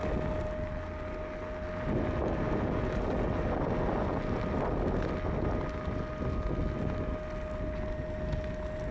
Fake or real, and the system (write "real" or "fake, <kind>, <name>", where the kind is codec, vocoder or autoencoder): real